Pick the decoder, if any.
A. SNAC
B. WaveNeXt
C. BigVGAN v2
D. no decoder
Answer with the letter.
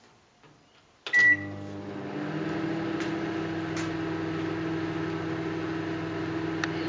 D